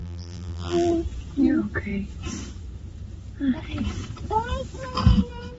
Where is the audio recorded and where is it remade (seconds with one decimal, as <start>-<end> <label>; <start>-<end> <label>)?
0.0-0.9 remade; 0.9-5.6 recorded